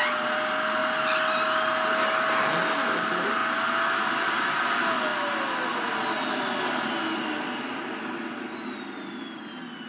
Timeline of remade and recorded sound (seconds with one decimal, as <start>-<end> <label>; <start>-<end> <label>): 0.0-9.9 recorded